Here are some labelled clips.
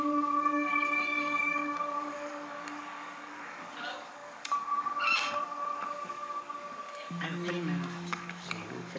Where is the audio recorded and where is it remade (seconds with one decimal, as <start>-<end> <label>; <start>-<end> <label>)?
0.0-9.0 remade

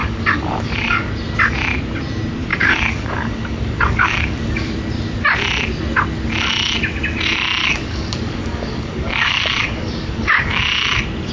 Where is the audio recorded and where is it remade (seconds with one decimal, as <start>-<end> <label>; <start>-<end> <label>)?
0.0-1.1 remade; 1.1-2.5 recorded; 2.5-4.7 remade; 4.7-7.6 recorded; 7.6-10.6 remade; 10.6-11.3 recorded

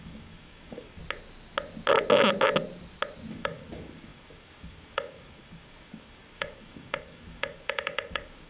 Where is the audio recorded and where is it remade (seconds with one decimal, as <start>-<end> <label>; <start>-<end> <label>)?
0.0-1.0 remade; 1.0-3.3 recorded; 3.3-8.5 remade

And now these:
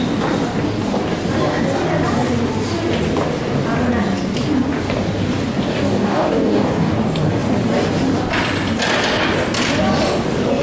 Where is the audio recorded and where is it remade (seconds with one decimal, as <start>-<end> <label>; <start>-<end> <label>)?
0.0-5.7 recorded; 5.7-6.9 remade; 6.9-10.6 recorded

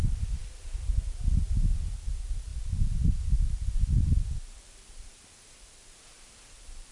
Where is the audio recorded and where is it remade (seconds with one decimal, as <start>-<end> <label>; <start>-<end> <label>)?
0.0-6.9 recorded

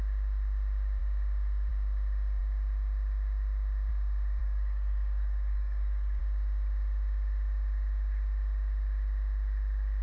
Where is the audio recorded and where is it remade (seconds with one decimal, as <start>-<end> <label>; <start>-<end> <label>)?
0.0-4.4 recorded; 4.4-6.2 remade; 6.2-10.0 recorded

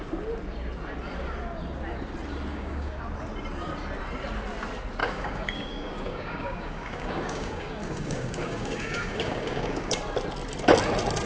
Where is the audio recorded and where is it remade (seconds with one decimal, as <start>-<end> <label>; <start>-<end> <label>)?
0.0-2.5 recorded; 2.5-3.0 remade; 3.0-5.0 recorded; 5.0-10.0 remade; 10.0-11.3 recorded